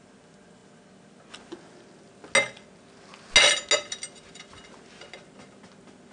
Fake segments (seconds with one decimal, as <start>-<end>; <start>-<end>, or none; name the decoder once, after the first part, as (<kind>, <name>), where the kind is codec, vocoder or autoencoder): none